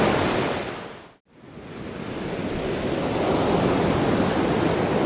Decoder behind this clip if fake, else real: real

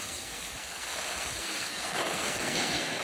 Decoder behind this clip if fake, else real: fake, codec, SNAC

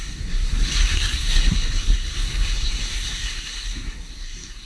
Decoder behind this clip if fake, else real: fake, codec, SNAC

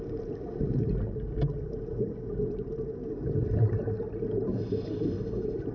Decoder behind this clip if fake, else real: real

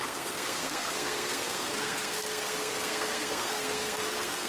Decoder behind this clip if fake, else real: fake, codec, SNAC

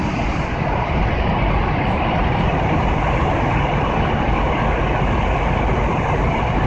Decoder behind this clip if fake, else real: real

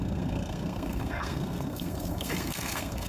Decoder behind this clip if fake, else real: fake, codec, SNAC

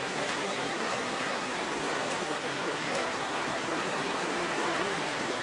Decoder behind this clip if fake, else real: fake, codec, SNAC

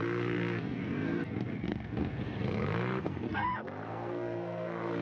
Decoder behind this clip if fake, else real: fake, codec, SNAC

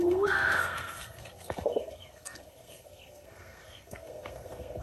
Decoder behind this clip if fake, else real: fake, codec, SNAC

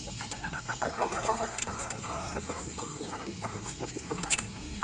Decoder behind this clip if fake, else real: fake, codec, SNAC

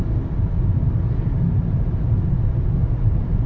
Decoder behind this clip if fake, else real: real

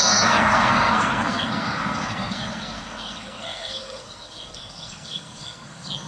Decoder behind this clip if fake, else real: fake, codec, SNAC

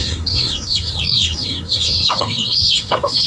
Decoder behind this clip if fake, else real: fake, codec, SNAC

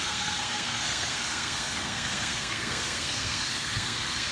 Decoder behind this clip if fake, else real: fake, codec, SNAC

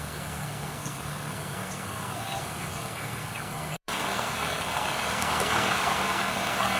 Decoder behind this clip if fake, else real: fake, codec, SNAC